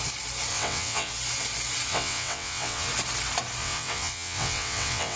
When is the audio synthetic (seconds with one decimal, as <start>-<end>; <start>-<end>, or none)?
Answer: 0.5-1.1; 1.9-2.9; 3.6-5.2